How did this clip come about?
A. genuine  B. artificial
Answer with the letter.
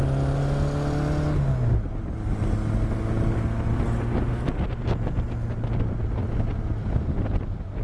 A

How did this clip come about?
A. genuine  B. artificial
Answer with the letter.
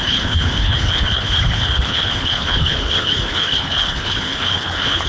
B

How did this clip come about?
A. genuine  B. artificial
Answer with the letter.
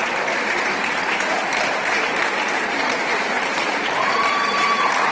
B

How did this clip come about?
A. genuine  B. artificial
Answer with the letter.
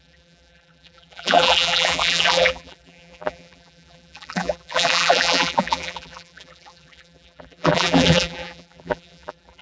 B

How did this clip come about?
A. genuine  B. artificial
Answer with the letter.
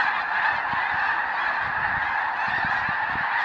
A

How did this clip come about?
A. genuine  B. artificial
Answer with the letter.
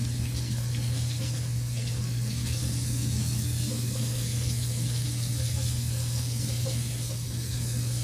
B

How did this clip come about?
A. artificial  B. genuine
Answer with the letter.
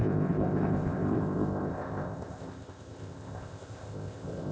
A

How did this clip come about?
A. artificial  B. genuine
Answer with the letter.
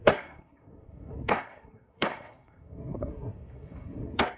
A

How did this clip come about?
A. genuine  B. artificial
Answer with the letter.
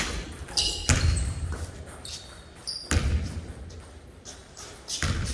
A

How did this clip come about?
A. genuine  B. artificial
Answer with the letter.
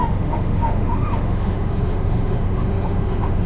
B